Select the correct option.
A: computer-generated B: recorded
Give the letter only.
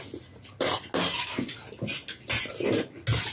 B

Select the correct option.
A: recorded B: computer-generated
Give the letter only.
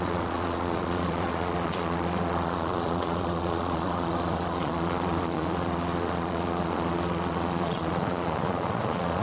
B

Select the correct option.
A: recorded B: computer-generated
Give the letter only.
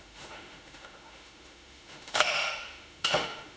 B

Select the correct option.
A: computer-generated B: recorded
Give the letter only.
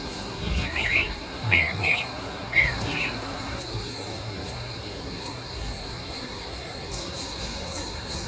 A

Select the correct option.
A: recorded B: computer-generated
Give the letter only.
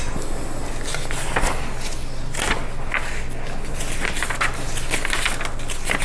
A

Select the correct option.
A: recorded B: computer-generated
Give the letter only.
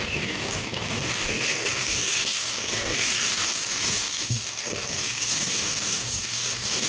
B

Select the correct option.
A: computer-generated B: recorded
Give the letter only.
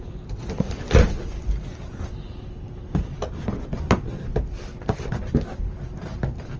B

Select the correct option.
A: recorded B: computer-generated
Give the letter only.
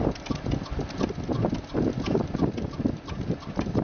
A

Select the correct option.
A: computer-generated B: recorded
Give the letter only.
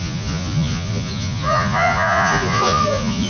A